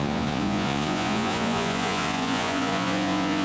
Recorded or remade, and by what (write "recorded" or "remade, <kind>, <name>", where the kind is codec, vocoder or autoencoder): remade, vocoder, Vocos